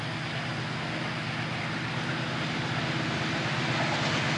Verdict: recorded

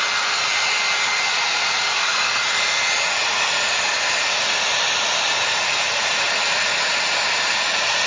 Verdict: recorded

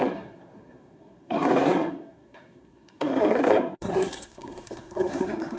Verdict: remade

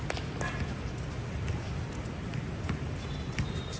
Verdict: recorded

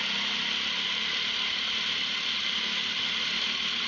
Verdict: recorded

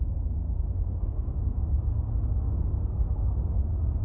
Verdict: remade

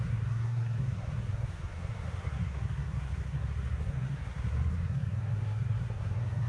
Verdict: remade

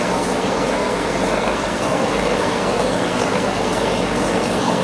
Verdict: remade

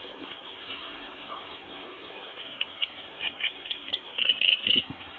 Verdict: remade